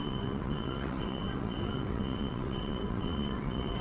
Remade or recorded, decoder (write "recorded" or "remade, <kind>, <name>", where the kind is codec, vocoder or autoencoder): remade, vocoder, WaveNeXt